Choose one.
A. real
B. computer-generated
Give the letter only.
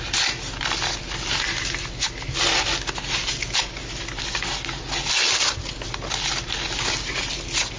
A